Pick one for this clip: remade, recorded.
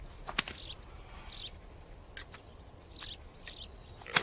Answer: recorded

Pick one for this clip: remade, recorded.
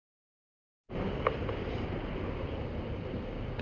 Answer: recorded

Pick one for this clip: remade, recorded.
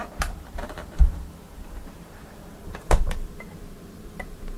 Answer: remade